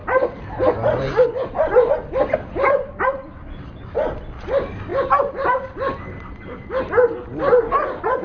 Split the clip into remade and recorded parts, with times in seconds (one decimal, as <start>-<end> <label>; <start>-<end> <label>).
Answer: 0.0-4.9 recorded; 4.9-6.8 remade; 6.8-8.2 recorded